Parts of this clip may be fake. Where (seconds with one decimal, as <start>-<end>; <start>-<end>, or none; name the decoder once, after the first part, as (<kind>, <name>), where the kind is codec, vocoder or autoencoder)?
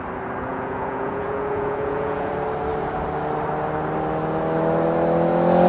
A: 0.5-2.3 (vocoder, Vocos)